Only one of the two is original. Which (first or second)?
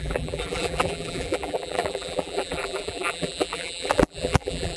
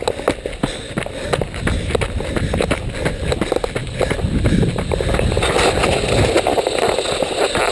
second